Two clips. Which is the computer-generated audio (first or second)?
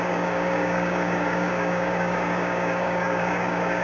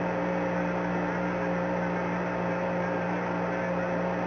first